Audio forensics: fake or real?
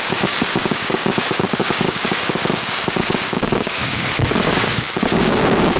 fake